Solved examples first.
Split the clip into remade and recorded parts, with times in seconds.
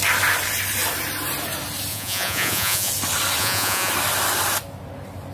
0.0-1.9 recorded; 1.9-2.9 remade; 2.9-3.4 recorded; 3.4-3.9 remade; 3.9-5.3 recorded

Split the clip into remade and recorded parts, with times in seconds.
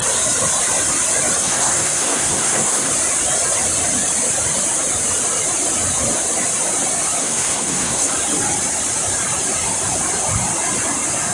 0.0-1.4 recorded; 1.4-2.9 remade; 2.9-7.2 recorded; 7.2-8.1 remade; 8.1-11.3 recorded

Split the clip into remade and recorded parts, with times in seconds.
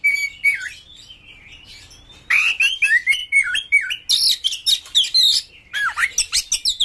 0.0-3.2 recorded; 3.2-3.9 remade; 3.9-6.8 recorded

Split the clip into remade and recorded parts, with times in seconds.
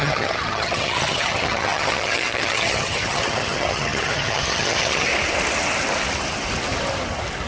0.0-5.1 remade; 5.1-7.5 recorded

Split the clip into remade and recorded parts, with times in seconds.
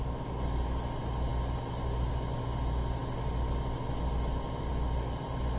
0.0-5.6 recorded